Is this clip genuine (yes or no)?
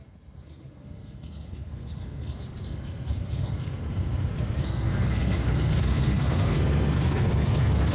no